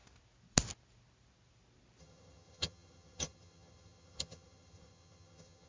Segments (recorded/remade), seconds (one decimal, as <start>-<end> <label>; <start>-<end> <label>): 0.0-2.0 recorded; 2.0-5.7 remade

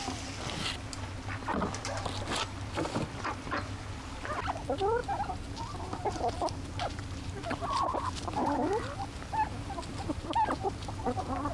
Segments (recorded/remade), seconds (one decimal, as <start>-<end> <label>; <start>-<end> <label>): 0.0-11.5 recorded

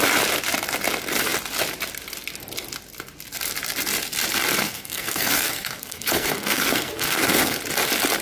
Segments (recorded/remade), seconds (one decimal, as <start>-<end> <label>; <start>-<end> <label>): 0.0-4.6 recorded; 4.6-7.6 remade; 7.6-8.2 recorded

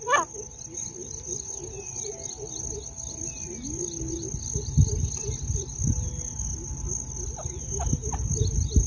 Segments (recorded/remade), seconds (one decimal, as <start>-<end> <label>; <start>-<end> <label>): 0.0-8.9 recorded

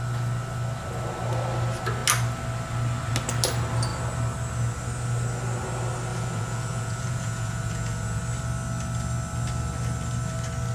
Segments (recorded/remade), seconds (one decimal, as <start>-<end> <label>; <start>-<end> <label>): 0.0-6.1 recorded; 6.1-8.2 remade; 8.2-10.7 recorded

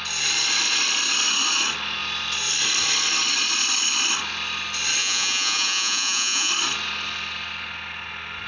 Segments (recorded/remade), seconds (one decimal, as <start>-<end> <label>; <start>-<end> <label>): 0.0-5.0 recorded; 5.0-6.5 remade; 6.5-8.5 recorded

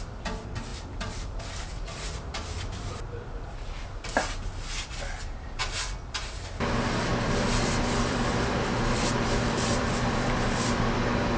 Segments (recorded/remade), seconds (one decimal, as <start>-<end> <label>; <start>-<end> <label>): 0.0-0.7 recorded; 0.7-1.4 remade; 1.4-7.1 recorded; 7.1-10.8 remade; 10.8-11.4 recorded